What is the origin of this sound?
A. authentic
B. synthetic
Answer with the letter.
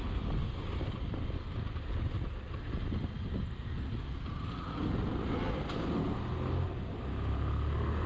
A